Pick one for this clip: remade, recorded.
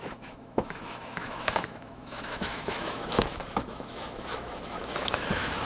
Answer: remade